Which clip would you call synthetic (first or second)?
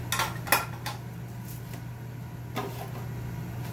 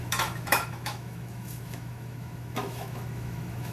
second